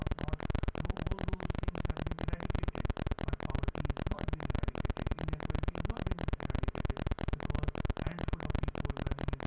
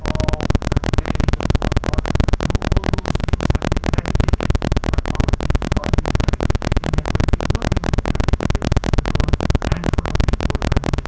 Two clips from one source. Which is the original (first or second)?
first